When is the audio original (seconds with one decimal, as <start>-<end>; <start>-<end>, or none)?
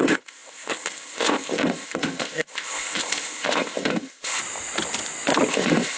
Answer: 4.4-5.5